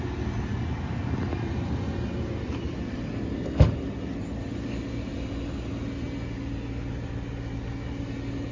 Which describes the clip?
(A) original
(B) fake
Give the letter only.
A